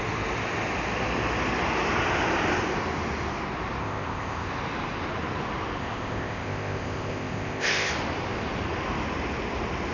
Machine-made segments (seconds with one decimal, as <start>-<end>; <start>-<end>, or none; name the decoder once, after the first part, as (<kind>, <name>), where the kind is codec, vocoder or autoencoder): 3.8-4.5 (codec, ZipCodec); 5.8-7.9